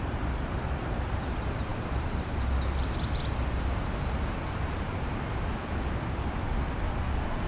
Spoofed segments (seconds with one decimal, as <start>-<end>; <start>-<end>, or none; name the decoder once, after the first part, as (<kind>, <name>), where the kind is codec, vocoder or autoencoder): 0.0-5.5 (vocoder, BigVGAN v2)